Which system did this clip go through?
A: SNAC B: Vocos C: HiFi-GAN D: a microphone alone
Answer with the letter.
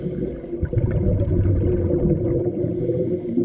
D